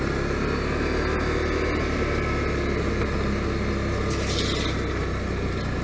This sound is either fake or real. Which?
real